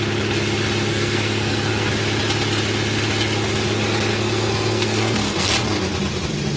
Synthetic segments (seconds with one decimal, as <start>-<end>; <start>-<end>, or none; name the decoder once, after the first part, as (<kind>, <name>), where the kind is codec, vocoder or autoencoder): 0.9-1.9 (codec, SNAC); 4.1-5.5